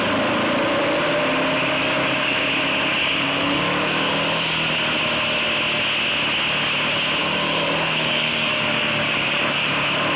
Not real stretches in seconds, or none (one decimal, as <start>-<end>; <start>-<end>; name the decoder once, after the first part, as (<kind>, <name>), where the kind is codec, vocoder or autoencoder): 1.8-2.4 (codec, DAC); 3.0-4.1; 7.2-9.7